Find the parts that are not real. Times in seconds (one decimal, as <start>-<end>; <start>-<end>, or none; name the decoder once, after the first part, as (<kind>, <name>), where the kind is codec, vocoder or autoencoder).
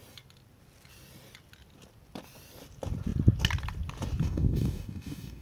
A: 4.2-5.4 (codec, DAC)